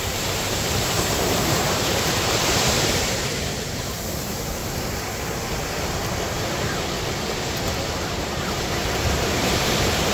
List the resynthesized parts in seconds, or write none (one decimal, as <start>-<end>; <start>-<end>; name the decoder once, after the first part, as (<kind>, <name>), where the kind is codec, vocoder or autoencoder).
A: 0.0-4.6 (vocoder, BigVGAN v2); 7.7-10.1